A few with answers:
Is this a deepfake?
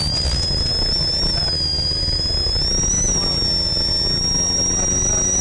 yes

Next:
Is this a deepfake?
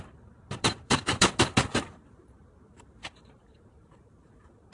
yes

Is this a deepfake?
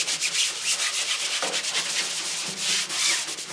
no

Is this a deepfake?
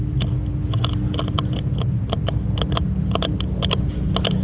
no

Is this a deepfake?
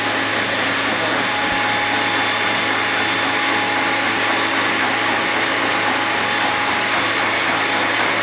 no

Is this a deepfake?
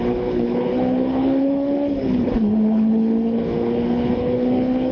yes